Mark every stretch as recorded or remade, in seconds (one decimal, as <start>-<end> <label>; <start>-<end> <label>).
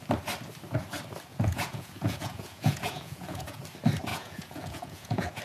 0.0-1.3 recorded; 1.3-3.6 remade; 3.6-4.1 recorded; 4.1-5.4 remade